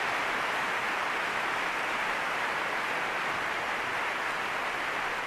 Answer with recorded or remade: recorded